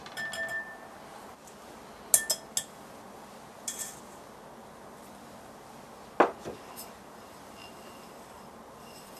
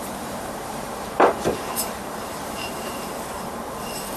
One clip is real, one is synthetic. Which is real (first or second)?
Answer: first